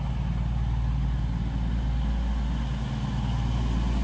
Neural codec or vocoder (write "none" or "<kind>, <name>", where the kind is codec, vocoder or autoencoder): none